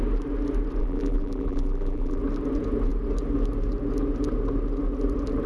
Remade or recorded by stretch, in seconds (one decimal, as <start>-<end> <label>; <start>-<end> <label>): 0.0-0.8 recorded; 0.8-2.2 remade; 2.2-5.5 recorded